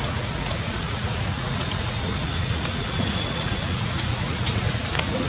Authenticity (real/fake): fake